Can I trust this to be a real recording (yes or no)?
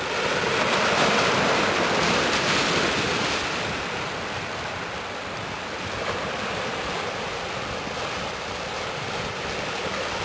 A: no